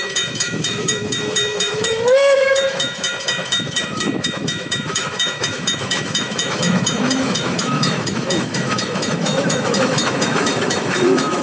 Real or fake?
fake